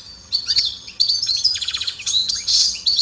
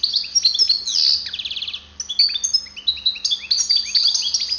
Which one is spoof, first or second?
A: first